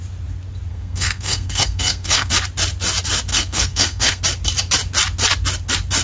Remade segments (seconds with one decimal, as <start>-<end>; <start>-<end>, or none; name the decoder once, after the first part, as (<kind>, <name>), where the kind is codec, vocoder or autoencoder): 0.7-2.3 (codec, SNAC); 3.3-4.2